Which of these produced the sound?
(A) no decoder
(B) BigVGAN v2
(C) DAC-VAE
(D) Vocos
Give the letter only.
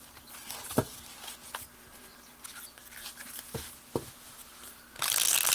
A